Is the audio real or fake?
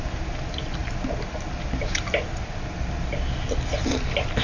real